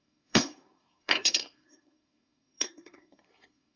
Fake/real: fake